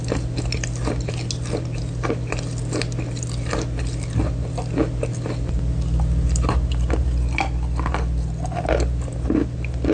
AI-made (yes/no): no